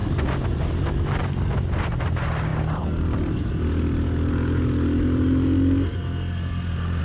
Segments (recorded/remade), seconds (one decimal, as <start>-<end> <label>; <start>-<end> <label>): 0.0-1.7 recorded; 1.7-2.5 remade; 2.5-7.0 recorded